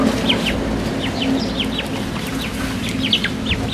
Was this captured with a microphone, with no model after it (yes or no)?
yes